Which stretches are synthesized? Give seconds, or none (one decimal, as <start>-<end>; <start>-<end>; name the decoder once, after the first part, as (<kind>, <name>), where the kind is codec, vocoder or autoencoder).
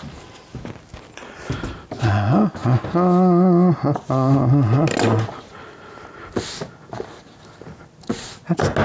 none